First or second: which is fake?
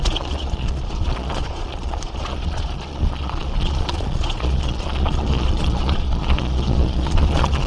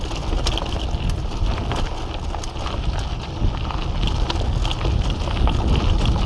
first